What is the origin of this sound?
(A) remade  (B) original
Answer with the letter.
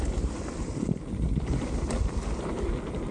B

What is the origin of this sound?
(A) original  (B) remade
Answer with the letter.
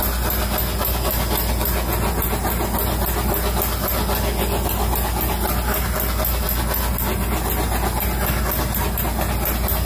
A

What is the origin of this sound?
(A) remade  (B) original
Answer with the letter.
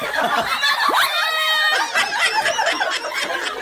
B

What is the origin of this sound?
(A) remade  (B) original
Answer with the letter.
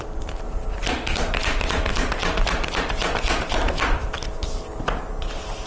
B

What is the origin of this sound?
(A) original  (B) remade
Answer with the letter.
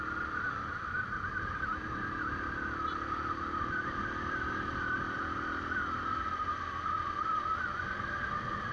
B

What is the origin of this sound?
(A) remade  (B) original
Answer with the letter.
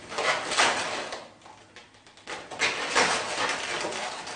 B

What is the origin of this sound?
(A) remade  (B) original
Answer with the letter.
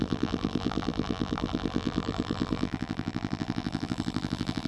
A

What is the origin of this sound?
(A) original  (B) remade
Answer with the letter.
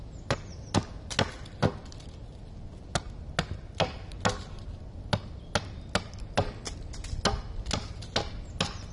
A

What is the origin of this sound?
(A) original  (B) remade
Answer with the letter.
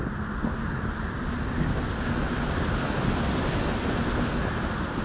B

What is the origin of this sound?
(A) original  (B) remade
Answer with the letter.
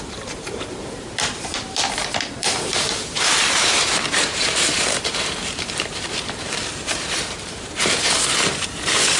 B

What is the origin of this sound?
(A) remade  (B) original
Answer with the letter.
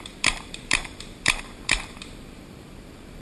A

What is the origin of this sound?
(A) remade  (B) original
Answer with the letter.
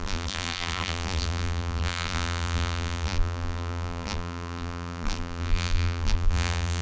A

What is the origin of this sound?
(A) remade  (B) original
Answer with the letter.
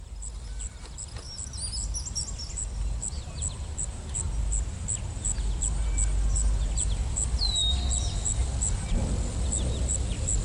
B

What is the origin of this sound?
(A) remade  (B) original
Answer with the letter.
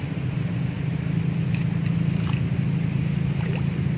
A